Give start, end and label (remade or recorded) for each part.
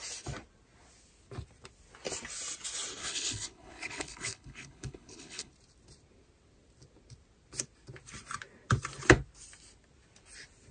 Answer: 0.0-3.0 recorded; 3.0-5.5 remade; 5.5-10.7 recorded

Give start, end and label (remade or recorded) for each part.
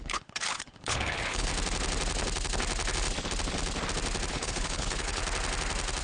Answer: 0.0-1.5 remade; 1.5-4.3 recorded; 4.3-5.2 remade; 5.2-6.0 recorded